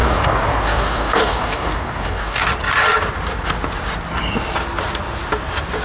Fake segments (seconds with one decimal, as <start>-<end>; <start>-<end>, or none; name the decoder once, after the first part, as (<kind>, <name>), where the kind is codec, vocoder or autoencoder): 0.0-2.4 (codec, DAC)